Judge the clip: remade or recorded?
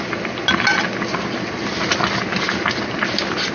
recorded